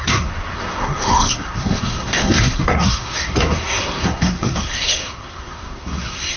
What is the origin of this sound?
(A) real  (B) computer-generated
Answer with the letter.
B